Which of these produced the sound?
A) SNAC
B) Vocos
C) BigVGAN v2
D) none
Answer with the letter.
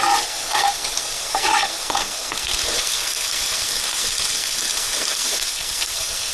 A